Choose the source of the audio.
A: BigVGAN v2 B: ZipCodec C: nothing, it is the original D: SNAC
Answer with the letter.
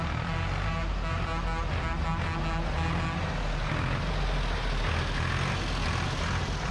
C